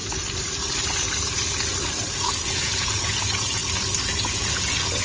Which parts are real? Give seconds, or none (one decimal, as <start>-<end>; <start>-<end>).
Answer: 0.0-2.3; 3.6-4.3